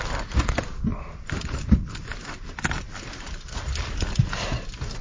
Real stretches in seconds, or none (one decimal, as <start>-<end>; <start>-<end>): 0.0-0.9; 3.9-5.0